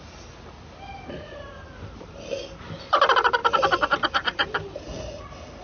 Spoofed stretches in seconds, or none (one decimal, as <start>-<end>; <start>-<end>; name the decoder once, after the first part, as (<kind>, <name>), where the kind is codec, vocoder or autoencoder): none